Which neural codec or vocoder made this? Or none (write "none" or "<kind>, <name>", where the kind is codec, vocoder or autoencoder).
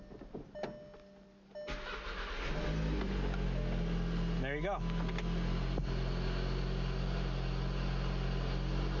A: none